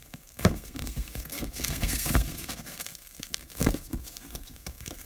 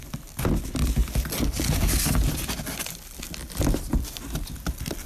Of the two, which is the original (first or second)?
second